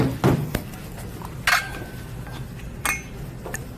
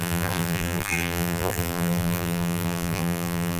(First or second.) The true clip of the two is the first